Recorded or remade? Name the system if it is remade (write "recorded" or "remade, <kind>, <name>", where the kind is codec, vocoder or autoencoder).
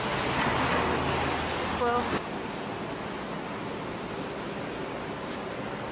recorded